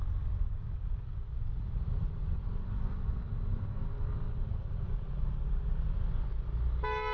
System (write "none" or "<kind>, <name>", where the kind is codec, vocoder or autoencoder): none